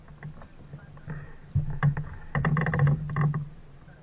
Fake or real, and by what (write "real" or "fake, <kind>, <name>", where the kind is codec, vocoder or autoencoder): real